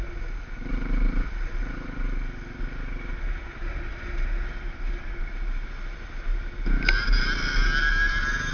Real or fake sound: real